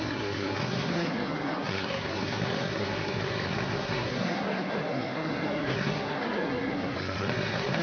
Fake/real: fake